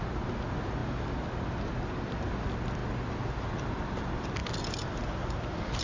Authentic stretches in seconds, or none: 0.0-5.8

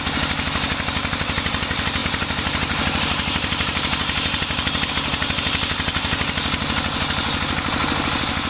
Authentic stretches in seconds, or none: 0.0-2.0; 4.9-8.5

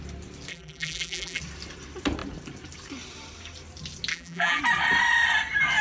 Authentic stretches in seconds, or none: 0.0-0.5; 1.4-4.1; 4.6-5.8

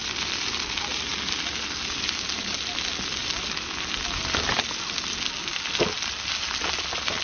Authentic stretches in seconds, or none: 0.0-7.2

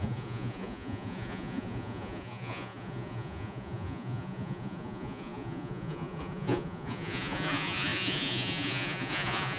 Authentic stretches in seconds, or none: none

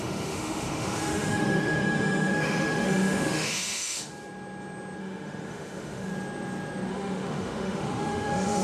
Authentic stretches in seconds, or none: 4.1-5.0; 6.1-6.9

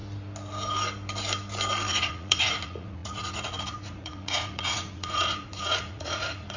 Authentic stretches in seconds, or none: 0.0-1.9

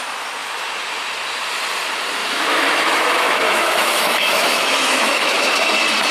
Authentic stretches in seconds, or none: 0.0-2.2; 5.5-6.1